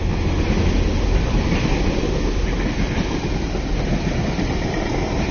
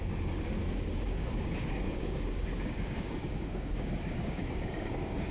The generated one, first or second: second